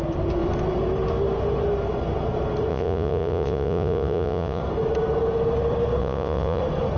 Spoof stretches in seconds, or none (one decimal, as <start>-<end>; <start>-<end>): 2.7-4.6; 6.0-6.6